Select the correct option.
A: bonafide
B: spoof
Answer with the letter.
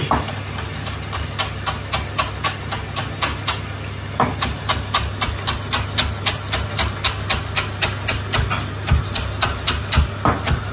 A